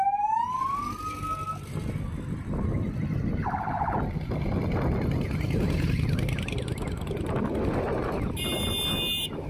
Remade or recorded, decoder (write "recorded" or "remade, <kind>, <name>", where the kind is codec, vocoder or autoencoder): recorded